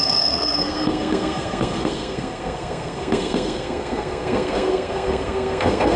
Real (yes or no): no